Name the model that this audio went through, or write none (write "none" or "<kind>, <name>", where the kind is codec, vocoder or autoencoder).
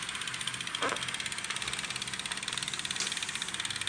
none